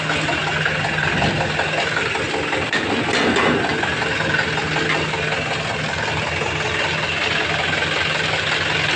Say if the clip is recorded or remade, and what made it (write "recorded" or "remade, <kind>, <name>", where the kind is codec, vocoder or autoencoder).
recorded